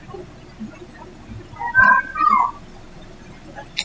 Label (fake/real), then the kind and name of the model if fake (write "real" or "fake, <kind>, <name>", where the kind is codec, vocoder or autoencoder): real